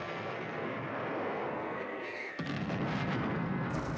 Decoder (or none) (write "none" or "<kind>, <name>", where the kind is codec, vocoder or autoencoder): codec, SNAC